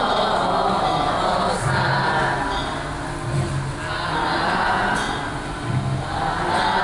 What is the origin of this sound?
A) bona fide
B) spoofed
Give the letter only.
A